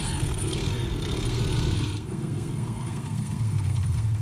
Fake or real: fake